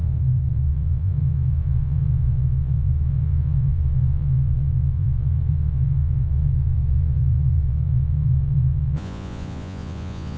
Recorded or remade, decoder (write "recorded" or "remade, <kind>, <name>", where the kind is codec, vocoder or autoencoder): remade, vocoder, Vocos